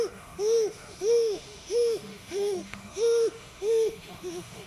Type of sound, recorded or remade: remade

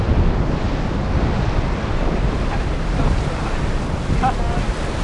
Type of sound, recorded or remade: recorded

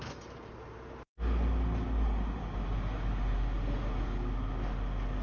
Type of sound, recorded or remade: recorded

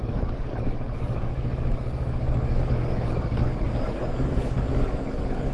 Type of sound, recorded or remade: remade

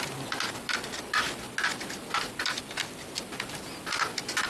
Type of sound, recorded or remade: recorded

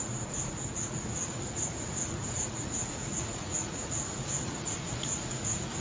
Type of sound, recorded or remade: remade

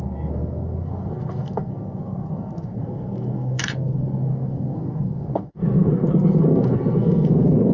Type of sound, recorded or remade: remade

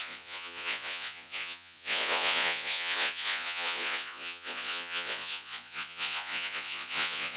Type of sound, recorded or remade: remade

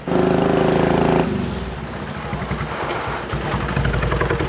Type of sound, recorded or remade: recorded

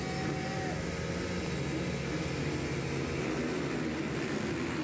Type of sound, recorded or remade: recorded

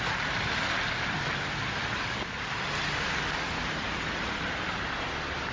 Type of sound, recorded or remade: recorded